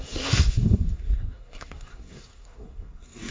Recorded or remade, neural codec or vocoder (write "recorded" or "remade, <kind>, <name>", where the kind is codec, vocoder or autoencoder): remade, codec, SNAC